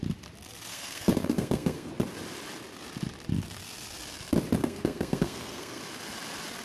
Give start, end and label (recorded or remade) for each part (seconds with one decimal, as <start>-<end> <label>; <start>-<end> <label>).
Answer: 0.0-0.7 recorded; 0.7-1.9 remade; 1.9-4.6 recorded; 4.6-5.8 remade; 5.8-6.6 recorded